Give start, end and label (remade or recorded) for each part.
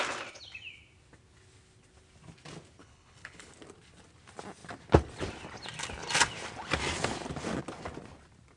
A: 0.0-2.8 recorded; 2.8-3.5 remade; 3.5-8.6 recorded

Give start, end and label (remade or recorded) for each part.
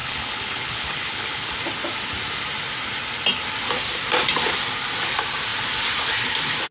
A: 0.0-1.6 remade; 1.6-6.7 recorded